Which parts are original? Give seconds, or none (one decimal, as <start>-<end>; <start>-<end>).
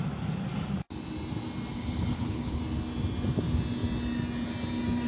0.0-1.7; 2.6-5.1